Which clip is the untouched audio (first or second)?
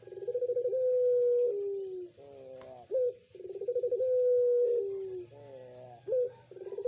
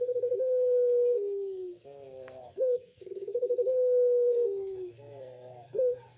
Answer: first